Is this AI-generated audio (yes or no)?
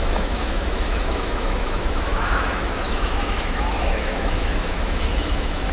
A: yes